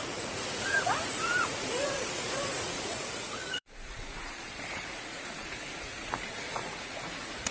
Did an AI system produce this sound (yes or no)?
yes